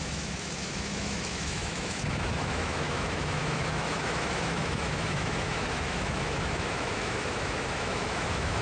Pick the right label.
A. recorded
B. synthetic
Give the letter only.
B